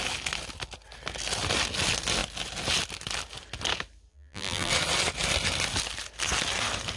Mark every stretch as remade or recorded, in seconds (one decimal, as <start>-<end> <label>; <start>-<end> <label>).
0.0-4.1 recorded; 4.1-4.7 remade; 4.7-7.0 recorded